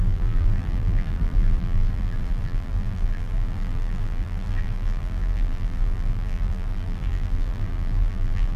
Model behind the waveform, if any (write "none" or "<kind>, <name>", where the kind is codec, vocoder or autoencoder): vocoder, BigVGAN v2